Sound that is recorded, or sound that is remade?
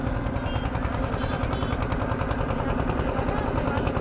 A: recorded